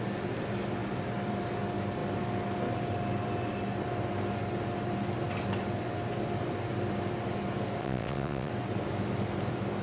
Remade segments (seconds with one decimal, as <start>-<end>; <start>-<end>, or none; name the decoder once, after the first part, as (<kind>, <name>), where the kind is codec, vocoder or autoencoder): 7.8-8.5 (vocoder, WaveNeXt)